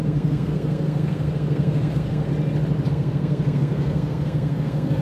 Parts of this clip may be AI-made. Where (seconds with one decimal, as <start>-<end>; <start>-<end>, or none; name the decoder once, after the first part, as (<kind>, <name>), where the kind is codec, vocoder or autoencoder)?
0.0-2.3 (codec, SNAC); 2.9-5.0